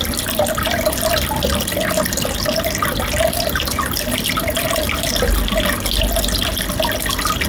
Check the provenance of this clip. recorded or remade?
recorded